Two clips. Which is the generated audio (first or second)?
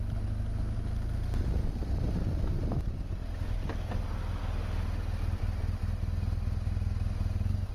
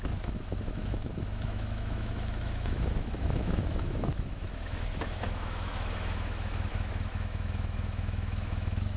second